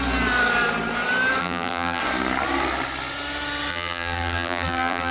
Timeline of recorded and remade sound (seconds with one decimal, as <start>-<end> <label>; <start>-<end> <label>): 0.0-1.4 recorded; 1.4-2.0 remade; 2.0-3.7 recorded; 3.7-5.1 remade